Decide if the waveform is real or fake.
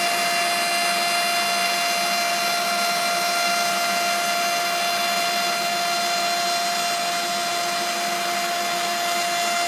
real